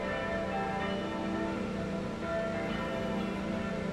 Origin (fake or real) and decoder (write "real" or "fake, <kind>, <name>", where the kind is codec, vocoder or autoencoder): real